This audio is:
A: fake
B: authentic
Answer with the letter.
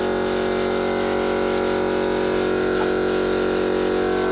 B